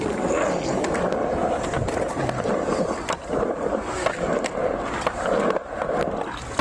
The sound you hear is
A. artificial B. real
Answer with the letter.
B